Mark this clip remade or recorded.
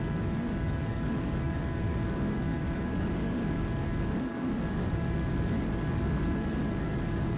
remade